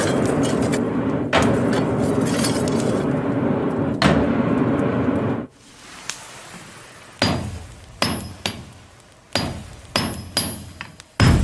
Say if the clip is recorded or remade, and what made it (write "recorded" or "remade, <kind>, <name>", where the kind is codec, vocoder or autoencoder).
recorded